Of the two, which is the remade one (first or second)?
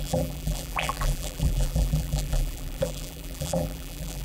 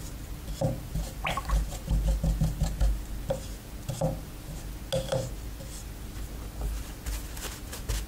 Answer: first